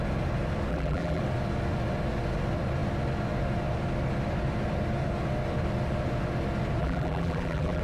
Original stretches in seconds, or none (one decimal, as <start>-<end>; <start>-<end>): 0.0-0.7; 1.2-6.8

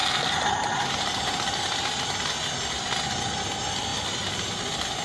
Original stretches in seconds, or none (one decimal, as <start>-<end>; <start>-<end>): 0.0-3.9

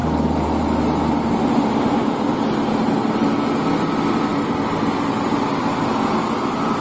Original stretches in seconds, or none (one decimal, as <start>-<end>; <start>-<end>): 0.0-6.8

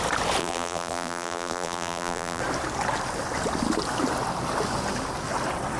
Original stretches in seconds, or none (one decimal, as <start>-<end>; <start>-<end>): 0.0-0.4; 2.4-5.8

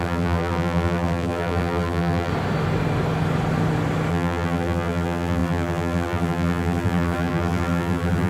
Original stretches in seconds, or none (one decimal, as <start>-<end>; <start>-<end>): 2.3-4.1